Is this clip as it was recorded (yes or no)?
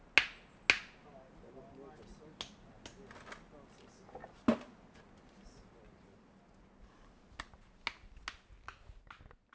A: yes